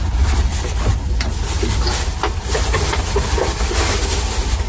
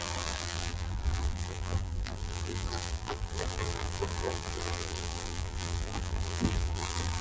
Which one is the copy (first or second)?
second